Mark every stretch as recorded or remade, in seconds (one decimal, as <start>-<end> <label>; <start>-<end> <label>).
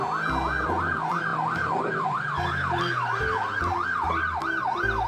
0.0-5.1 recorded